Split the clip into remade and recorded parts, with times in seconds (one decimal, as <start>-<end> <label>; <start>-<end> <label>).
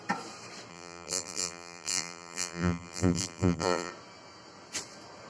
0.0-0.7 recorded; 0.7-3.9 remade; 3.9-5.3 recorded